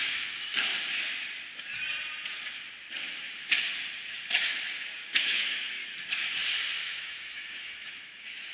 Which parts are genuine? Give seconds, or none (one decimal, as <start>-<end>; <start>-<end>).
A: 0.7-5.2; 5.8-6.8